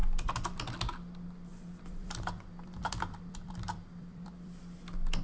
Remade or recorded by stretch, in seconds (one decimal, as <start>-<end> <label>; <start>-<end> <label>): 0.0-0.6 remade; 0.6-1.5 recorded; 1.5-4.6 remade; 4.6-5.2 recorded

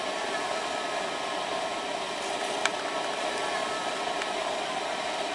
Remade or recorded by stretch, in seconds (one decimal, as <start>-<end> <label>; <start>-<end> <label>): 0.0-5.3 recorded

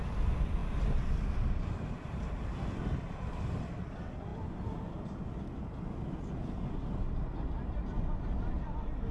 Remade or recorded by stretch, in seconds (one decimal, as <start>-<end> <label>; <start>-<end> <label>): 0.0-9.1 recorded

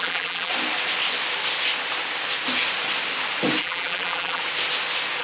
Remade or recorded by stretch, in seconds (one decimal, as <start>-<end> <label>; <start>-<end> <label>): 0.0-0.5 remade; 0.5-3.6 recorded; 3.6-4.4 remade; 4.4-5.2 recorded

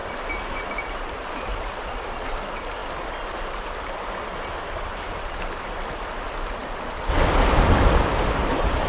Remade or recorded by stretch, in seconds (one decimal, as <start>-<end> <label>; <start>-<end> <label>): 0.0-8.9 remade